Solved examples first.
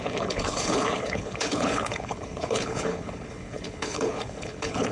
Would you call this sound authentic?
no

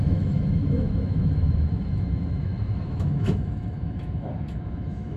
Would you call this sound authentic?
no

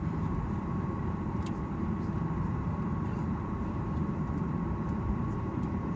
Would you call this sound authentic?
no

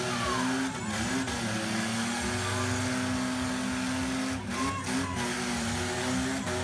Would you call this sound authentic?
yes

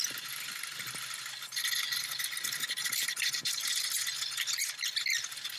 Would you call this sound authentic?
yes